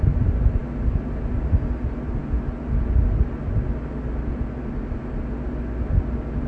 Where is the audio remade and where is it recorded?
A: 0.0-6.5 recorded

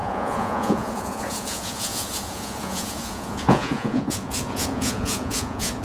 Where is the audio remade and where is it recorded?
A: 0.0-5.8 remade

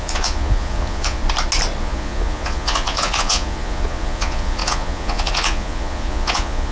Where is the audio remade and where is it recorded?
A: 0.0-1.2 remade; 1.2-1.8 recorded; 1.8-6.7 remade

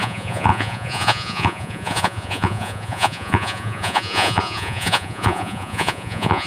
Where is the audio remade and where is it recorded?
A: 0.0-6.5 remade